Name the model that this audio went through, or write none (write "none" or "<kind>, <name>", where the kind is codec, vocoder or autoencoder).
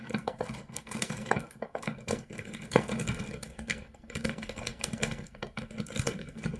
codec, SNAC